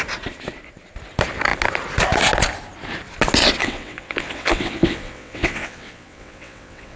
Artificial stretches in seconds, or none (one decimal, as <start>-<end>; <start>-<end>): 3.6-7.0